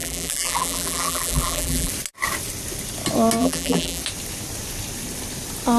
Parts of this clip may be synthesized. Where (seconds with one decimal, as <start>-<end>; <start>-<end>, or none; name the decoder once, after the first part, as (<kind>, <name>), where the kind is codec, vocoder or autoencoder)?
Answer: 0.0-1.9 (vocoder, BigVGAN v2); 3.4-4.0